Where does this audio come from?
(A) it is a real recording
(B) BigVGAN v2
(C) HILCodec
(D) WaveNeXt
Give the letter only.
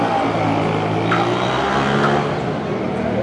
A